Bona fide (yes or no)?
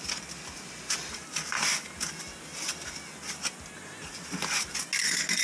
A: yes